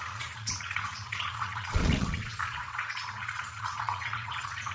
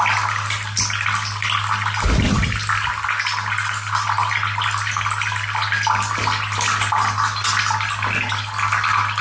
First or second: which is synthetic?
first